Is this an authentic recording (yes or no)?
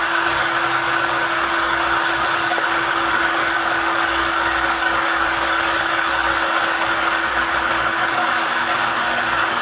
no